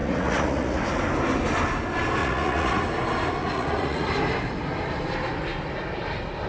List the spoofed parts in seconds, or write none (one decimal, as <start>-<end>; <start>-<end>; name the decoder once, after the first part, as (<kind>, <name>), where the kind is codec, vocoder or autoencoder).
0.0-0.8 (vocoder, Vocos); 2.2-2.8; 3.4-4.1

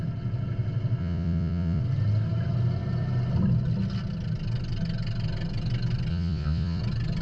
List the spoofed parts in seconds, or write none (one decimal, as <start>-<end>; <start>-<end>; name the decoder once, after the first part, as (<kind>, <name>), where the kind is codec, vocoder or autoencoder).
1.0-1.8 (vocoder, Vocos); 6.1-6.8

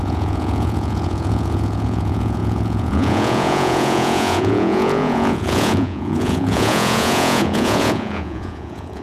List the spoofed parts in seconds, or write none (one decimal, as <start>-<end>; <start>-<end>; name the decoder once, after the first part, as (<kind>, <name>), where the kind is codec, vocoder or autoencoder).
0.0-9.0 (vocoder, Vocos)

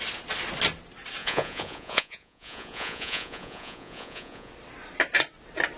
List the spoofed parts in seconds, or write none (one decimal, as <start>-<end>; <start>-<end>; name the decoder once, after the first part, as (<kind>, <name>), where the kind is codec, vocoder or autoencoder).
1.2-4.5 (vocoder, Vocos)

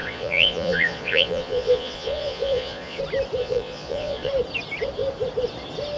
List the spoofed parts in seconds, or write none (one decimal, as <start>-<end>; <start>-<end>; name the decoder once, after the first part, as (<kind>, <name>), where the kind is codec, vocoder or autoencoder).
0.0-3.0 (vocoder, Vocos); 3.4-4.3

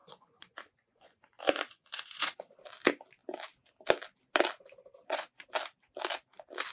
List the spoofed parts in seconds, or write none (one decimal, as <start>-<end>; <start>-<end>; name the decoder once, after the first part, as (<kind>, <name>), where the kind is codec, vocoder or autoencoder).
0.0-2.4 (vocoder, Vocos); 5.0-5.5

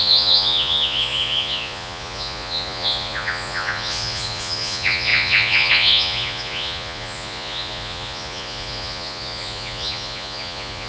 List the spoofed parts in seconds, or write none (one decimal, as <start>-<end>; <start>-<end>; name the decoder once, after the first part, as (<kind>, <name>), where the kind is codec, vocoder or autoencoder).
0.0-10.9 (vocoder, Vocos)

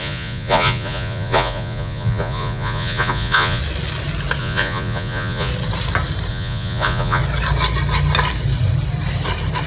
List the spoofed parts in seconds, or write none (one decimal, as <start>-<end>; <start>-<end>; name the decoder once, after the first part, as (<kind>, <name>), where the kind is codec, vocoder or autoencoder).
0.0-3.6 (vocoder, Vocos); 4.4-5.5; 6.3-7.2